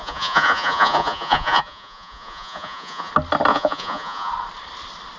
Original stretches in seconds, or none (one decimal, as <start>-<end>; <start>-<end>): 3.1-3.5; 4.3-5.2